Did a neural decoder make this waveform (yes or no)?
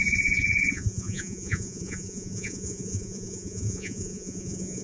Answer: yes